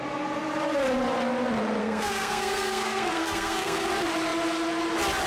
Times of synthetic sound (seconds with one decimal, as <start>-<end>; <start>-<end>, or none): 1.8-3.9

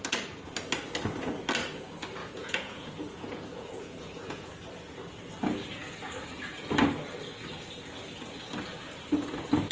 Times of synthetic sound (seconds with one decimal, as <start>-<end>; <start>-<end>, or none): 2.2-4.5

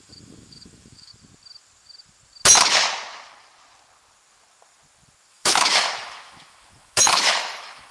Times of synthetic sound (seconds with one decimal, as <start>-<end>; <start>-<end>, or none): 0.0-1.1; 5.3-7.9

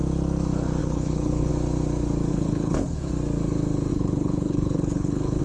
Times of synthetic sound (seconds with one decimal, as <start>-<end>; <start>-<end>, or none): 0.8-1.5; 2.3-3.1; 3.9-5.4

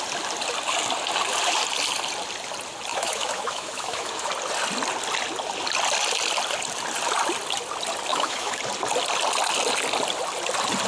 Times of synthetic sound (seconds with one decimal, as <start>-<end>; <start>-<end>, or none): 2.9-4.3; 8.1-8.6